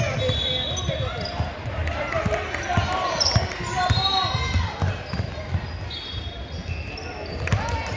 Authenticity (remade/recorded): recorded